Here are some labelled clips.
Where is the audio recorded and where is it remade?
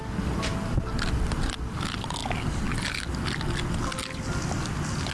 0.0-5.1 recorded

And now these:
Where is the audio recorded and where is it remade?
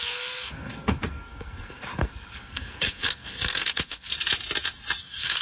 0.0-4.1 remade; 4.1-5.0 recorded; 5.0-5.4 remade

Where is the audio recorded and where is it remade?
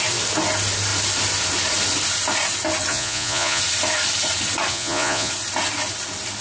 0.0-2.9 recorded; 2.9-3.6 remade; 3.6-4.7 recorded; 4.7-5.3 remade; 5.3-6.4 recorded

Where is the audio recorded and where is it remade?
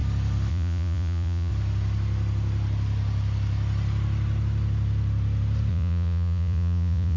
0.0-0.5 recorded; 0.5-1.5 remade; 1.5-5.7 recorded; 5.7-7.2 remade